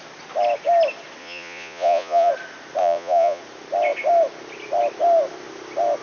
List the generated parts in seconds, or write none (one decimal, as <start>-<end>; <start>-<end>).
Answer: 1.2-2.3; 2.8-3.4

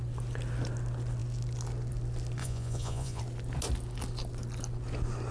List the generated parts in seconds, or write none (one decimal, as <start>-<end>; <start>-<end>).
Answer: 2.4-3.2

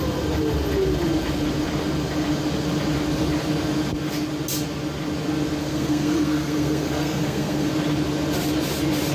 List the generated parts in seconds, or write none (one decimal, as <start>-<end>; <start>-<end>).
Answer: 5.6-7.7

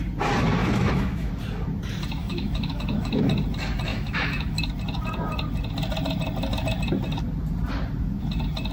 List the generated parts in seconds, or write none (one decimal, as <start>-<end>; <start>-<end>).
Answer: 0.6-1.3; 2.2-3.1; 3.9-4.6

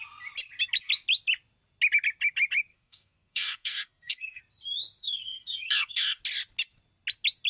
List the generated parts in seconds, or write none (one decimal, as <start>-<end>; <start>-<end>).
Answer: 2.7-4.4; 5.0-6.2

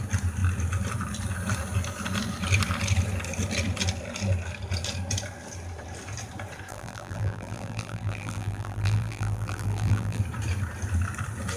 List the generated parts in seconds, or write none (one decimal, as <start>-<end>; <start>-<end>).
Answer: 6.7-10.2